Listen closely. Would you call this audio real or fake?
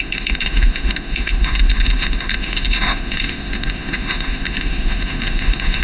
fake